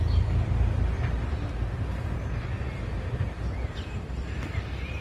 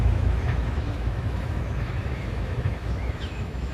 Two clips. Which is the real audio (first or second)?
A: first